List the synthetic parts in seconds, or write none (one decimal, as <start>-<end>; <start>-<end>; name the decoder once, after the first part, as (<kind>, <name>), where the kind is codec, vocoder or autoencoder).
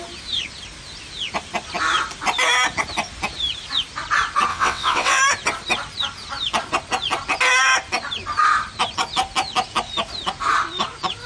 4.5-5.2 (vocoder, WaveNeXt)